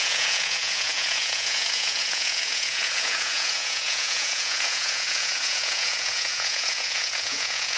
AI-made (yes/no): yes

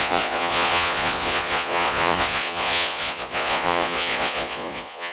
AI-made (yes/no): yes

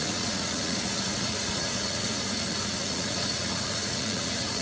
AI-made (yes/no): yes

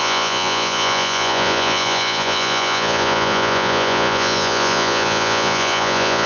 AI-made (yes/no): yes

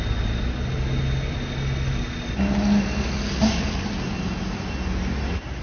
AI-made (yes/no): no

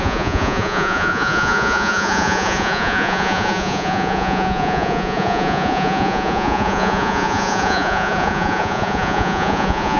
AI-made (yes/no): yes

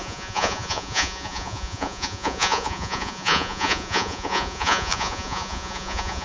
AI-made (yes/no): yes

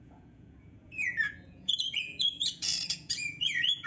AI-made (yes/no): yes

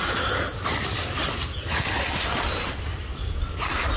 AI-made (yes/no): no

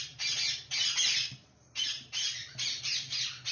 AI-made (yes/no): no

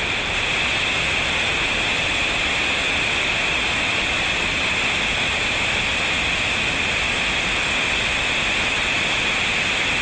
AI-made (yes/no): no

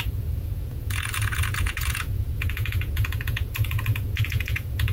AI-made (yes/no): yes